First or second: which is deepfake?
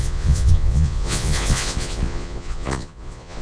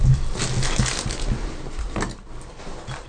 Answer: first